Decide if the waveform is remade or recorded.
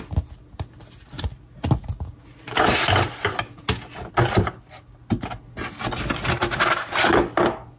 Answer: recorded